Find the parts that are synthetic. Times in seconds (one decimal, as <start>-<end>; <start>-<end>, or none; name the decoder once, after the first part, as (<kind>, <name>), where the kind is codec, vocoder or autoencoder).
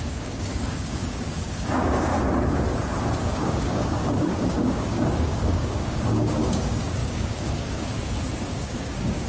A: 0.0-2.1 (codec, DAC); 3.2-9.3